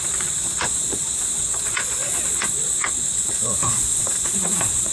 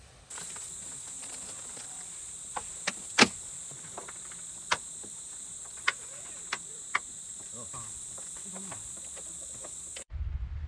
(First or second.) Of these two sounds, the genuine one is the second